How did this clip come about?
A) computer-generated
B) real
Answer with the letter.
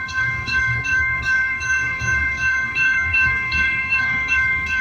A